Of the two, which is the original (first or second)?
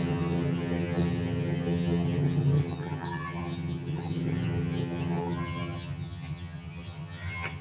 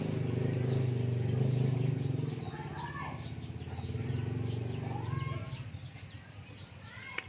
second